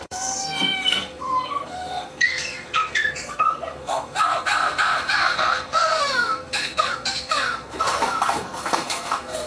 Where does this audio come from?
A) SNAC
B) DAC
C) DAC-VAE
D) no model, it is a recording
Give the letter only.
A